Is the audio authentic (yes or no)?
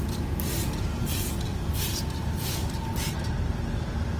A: yes